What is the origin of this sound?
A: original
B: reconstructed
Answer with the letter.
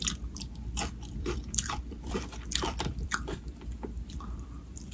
B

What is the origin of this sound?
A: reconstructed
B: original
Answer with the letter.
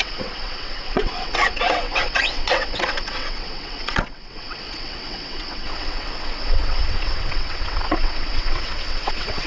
A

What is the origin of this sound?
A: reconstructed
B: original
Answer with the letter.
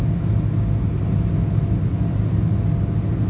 B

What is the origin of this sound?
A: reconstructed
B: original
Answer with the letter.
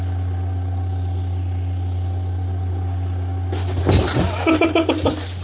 B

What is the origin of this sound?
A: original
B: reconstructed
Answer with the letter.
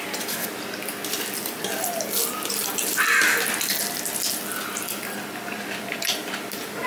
A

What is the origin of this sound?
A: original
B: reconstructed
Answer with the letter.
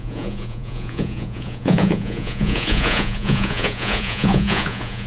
B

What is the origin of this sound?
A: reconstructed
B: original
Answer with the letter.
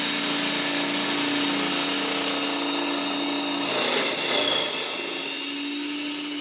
B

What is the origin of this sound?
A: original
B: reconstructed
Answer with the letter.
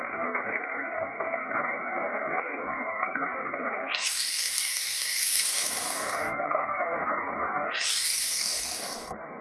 B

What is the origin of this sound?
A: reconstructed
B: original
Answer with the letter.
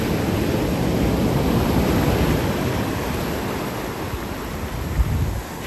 B